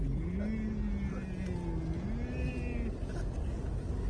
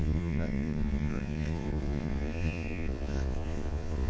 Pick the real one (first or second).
first